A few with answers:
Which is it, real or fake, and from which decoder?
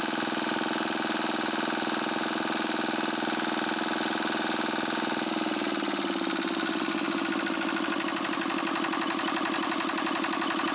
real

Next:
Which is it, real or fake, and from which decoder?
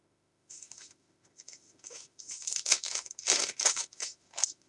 fake, autoencoder, DAC-VAE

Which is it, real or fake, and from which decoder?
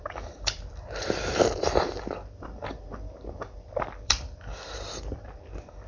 fake, vocoder, BigVGAN v2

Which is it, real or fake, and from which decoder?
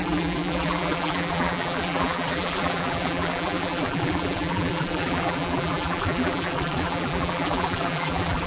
fake, vocoder, BigVGAN v2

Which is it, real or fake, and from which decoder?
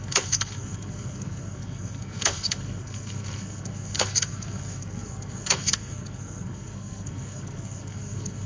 fake, codec, SNAC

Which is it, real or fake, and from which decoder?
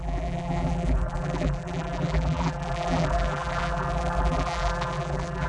fake, vocoder, BigVGAN v2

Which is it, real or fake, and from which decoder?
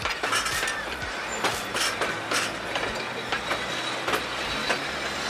real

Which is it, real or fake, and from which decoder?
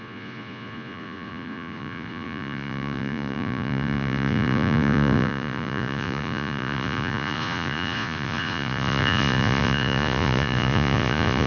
fake, vocoder, Vocos